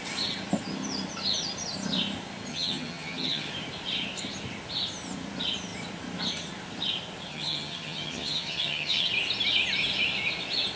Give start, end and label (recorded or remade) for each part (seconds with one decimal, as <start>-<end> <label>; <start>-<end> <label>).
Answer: 0.0-2.5 recorded; 2.5-3.5 remade; 3.5-7.3 recorded; 7.3-9.1 remade; 9.1-10.8 recorded